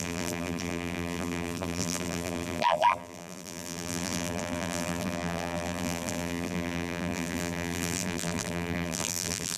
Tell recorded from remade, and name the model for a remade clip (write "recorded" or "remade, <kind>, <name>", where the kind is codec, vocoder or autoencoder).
remade, vocoder, BigVGAN v2